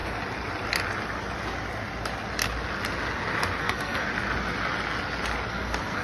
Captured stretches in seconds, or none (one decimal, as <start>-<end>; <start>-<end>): 0.0-3.6; 4.1-5.5